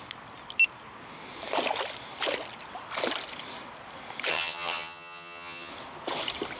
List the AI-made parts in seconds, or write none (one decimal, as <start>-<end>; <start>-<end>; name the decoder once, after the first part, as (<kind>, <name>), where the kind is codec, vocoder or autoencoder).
4.3-5.7 (vocoder, HiFi-GAN)